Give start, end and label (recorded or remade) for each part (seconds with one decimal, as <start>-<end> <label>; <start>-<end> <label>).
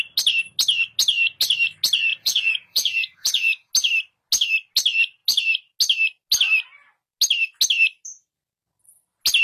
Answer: 0.0-2.1 recorded; 2.1-3.7 remade; 3.7-9.4 recorded